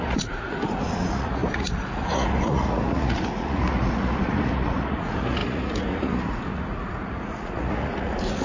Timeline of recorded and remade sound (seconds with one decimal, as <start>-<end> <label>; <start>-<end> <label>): 0.0-8.4 remade